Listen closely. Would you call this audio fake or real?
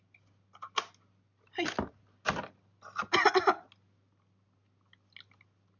real